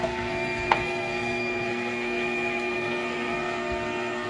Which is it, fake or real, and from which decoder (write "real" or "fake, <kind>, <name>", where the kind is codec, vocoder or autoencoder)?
fake, codec, SNAC